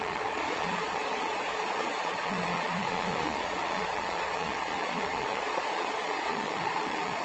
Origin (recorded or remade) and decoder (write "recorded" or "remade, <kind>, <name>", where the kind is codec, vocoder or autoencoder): remade, vocoder, Vocos